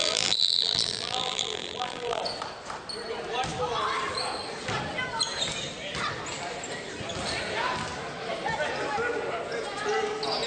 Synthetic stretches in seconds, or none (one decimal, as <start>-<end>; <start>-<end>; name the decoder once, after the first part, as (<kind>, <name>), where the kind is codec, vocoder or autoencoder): 0.0-2.2 (vocoder, BigVGAN v2)